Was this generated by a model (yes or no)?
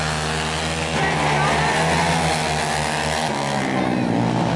no